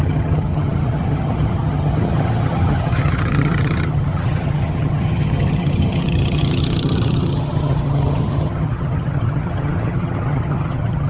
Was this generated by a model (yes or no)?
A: yes